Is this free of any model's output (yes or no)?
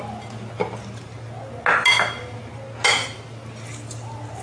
yes